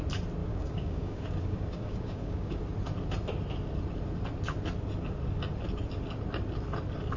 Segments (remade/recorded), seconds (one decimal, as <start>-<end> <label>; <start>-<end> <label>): 0.0-0.4 recorded; 0.4-2.6 remade; 2.6-7.2 recorded